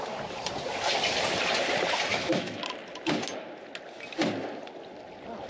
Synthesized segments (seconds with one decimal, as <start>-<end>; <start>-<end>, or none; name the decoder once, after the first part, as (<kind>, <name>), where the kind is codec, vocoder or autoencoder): 2.1-2.6 (autoencoder, DAC-VAE)